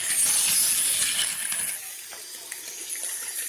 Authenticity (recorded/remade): recorded